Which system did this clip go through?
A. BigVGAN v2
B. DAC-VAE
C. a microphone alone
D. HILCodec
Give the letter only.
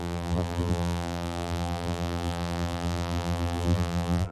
A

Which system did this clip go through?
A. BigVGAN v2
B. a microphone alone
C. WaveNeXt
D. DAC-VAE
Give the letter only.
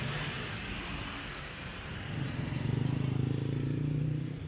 A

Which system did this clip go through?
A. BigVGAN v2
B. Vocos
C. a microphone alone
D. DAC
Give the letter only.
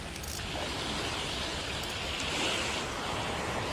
C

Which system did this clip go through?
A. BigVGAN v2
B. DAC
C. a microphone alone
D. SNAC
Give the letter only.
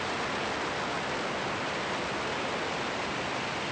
C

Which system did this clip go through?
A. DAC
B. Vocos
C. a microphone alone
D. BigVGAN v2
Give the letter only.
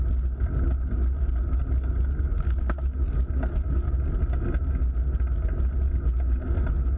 C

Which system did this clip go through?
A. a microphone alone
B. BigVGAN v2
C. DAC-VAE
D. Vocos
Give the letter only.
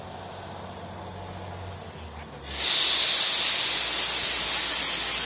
A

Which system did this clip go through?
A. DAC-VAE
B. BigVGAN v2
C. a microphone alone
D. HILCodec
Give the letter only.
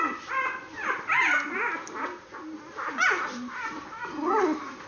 C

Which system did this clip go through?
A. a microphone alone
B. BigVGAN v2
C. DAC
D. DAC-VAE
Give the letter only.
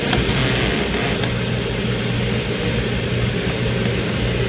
A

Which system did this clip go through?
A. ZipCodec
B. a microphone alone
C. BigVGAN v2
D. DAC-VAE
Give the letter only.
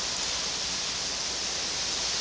B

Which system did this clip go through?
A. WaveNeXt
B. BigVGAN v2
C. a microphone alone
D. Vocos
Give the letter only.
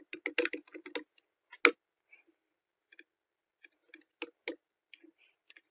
C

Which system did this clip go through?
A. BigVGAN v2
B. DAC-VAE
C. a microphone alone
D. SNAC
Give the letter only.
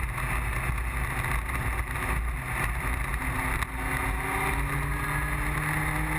C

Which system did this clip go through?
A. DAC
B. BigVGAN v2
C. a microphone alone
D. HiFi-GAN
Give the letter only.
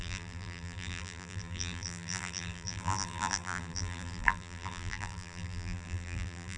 B